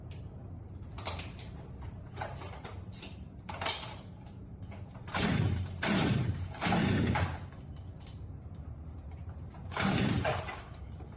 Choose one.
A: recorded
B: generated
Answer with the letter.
B